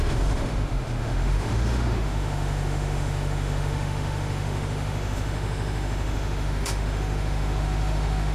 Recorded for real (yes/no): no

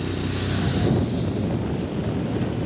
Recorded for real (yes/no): yes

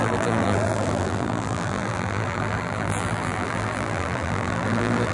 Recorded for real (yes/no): no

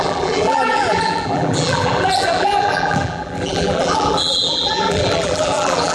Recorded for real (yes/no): no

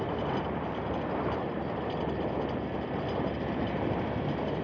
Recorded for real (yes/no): yes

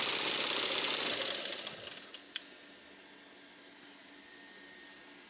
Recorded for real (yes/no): yes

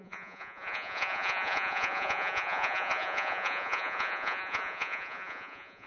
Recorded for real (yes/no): no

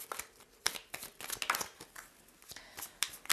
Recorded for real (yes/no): yes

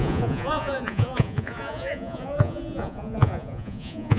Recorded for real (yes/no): no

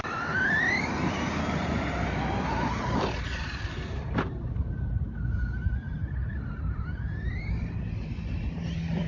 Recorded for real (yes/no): yes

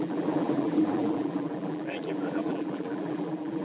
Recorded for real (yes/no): no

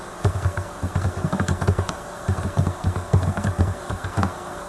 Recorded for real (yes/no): no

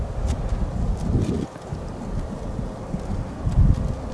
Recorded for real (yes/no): yes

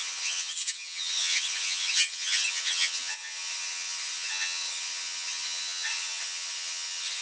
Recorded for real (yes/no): no